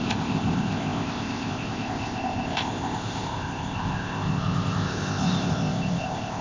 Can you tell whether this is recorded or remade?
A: remade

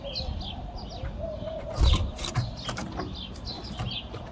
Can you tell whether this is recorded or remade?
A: recorded